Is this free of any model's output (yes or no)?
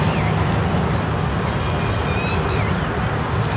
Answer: yes